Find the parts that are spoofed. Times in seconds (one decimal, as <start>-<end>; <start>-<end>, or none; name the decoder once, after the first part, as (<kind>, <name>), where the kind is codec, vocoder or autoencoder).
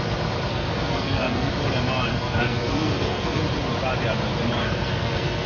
0.5-1.5 (codec, SNAC); 2.1-3.4; 4.6-5.5